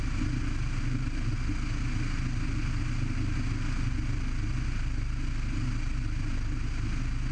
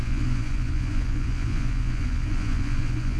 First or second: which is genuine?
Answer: first